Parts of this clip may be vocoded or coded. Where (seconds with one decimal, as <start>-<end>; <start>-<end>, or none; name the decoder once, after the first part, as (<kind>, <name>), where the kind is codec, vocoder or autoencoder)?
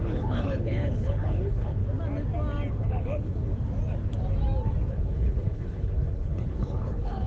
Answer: 0.0-1.8 (codec, HILCodec); 2.7-3.5; 4.9-7.3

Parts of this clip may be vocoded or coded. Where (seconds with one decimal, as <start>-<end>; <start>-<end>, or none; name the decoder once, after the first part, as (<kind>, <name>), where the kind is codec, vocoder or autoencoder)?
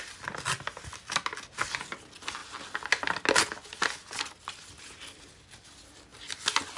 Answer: none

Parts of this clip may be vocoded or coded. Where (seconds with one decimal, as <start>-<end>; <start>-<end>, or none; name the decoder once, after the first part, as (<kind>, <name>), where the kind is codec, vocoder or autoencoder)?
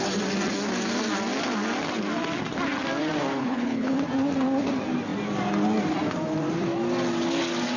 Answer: 3.4-4.0 (codec, HILCodec)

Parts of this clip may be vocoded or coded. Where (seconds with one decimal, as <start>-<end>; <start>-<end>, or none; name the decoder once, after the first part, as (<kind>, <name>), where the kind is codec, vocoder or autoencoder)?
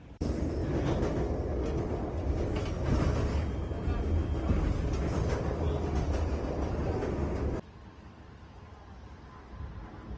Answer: none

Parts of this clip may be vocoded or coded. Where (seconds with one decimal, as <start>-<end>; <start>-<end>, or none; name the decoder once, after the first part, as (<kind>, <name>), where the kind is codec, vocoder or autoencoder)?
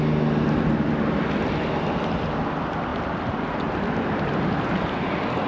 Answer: none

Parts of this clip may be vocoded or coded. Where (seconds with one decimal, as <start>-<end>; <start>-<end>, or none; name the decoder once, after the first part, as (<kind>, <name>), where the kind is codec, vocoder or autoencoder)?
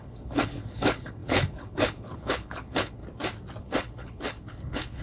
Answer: 0.0-3.0 (codec, HILCodec); 3.6-5.0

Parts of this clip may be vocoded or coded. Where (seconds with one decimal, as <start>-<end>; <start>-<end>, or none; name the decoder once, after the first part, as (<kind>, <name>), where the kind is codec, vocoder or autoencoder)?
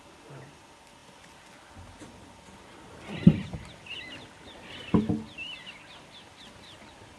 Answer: none